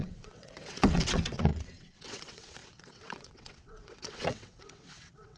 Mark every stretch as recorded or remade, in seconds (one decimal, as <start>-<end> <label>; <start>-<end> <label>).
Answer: 0.0-5.4 remade